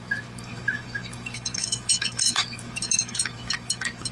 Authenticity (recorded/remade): remade